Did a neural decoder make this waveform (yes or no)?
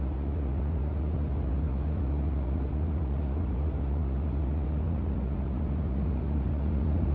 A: yes